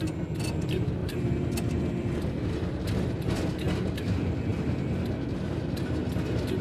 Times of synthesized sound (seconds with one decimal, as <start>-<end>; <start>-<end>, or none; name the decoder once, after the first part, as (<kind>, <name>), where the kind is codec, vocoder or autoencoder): 1.0-2.3 (vocoder, BigVGAN v2)